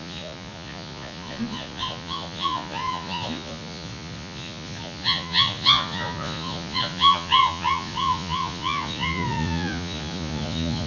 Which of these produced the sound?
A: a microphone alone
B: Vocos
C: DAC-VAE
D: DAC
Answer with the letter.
B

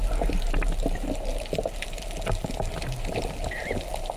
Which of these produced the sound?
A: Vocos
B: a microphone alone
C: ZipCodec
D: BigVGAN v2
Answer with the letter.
B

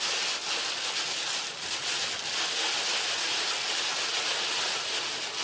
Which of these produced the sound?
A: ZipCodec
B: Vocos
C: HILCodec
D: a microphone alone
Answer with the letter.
D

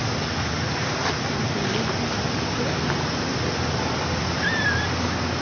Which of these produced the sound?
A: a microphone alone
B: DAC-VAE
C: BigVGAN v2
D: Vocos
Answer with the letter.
A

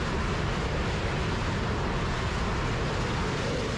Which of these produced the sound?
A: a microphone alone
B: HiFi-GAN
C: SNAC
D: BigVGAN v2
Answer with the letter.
A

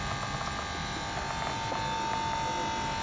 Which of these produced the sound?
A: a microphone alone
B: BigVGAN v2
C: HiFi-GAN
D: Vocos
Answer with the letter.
A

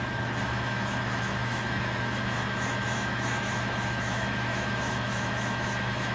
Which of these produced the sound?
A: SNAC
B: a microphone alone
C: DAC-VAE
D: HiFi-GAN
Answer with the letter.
C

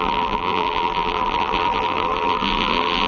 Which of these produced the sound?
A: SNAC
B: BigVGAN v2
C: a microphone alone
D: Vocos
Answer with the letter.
B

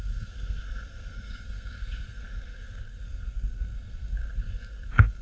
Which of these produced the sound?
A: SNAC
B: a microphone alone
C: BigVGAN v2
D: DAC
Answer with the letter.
A